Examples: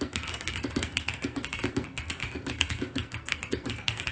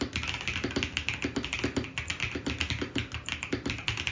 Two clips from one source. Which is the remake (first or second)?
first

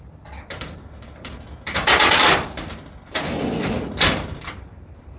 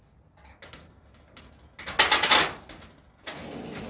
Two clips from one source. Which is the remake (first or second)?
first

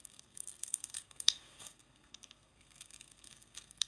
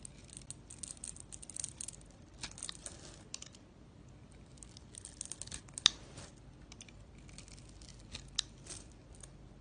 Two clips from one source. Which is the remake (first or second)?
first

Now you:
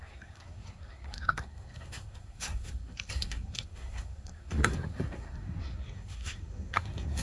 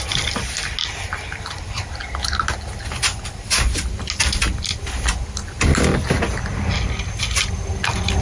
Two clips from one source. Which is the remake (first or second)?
first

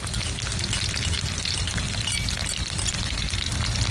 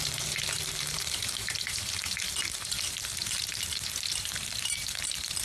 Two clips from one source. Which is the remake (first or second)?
second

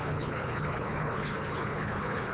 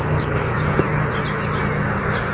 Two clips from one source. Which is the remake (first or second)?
first